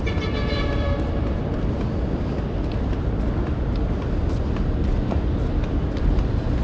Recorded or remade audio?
recorded